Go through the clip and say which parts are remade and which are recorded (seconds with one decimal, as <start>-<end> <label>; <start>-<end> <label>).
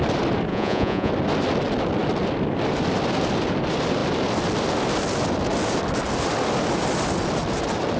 0.0-0.5 recorded; 0.5-1.1 remade; 1.1-8.0 recorded